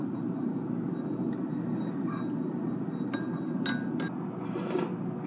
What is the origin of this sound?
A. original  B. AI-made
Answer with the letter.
A